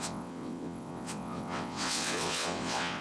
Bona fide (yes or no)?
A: no